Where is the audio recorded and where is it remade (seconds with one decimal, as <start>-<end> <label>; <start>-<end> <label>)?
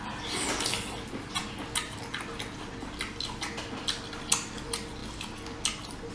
0.0-6.1 recorded